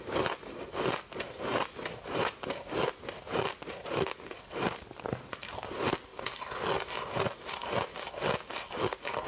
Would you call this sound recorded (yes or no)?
yes